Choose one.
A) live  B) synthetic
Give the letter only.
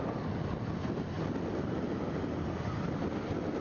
A